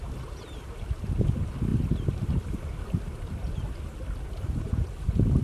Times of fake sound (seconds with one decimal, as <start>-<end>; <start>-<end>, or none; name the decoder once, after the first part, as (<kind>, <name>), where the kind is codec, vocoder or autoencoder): none